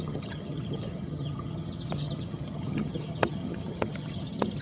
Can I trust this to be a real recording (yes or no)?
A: no